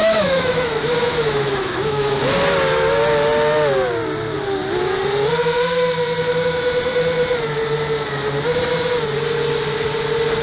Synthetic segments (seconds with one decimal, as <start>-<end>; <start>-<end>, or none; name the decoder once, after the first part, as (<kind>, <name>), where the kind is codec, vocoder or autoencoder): 0.0-2.2 (autoencoder, DAC-VAE)